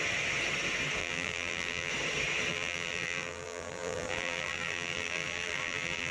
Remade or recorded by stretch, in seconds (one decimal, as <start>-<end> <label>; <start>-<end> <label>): 0.0-1.0 recorded; 1.0-1.9 remade; 1.9-2.5 recorded; 2.5-6.1 remade